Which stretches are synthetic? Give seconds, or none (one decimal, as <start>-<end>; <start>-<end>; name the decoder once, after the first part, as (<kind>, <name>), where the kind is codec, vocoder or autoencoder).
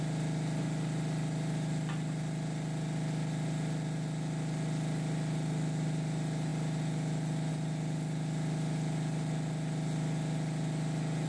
none